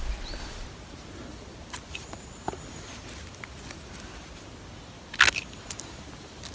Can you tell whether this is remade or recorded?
recorded